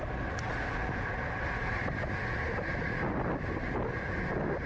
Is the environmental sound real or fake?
real